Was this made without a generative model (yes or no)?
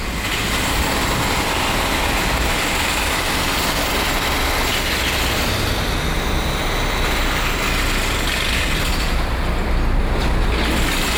yes